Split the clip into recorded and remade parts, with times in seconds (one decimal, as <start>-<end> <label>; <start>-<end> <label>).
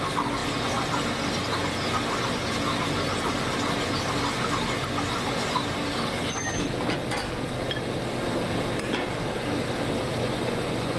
0.0-10.2 recorded; 10.2-11.0 remade